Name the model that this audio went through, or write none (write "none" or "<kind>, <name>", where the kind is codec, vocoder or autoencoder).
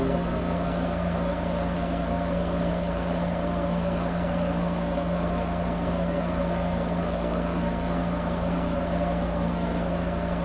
codec, SNAC